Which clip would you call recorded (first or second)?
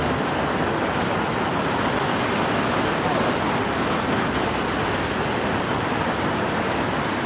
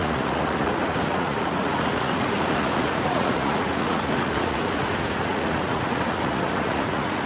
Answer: first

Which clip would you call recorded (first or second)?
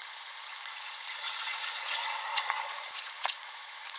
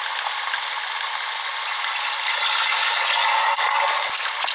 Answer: second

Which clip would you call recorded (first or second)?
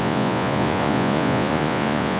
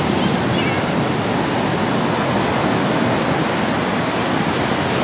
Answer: second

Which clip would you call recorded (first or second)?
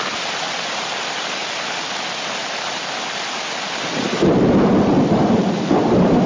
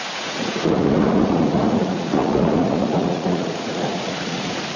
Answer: first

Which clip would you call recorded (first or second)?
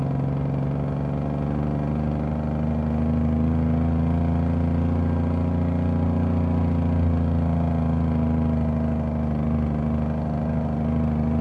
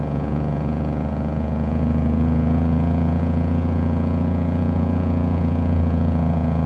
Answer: first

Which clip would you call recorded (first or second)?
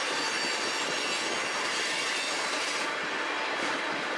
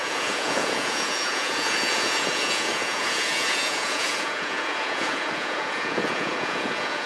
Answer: first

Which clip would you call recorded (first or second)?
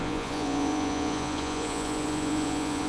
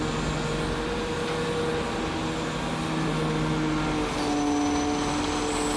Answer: second